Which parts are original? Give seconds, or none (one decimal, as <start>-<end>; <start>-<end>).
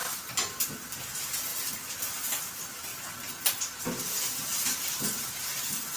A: 0.0-6.0